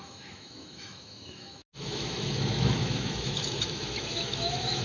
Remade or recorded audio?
remade